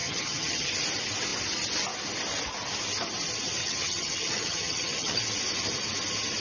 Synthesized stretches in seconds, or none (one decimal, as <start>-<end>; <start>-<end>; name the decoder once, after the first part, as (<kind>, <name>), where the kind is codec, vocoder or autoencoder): 0.0-0.7 (vocoder, HiFi-GAN); 3.6-5.2